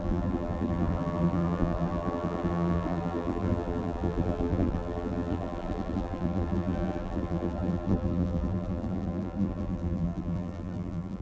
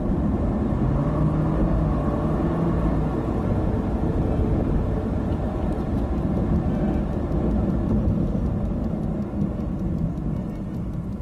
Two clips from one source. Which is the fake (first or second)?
first